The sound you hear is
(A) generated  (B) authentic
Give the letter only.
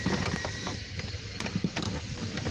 B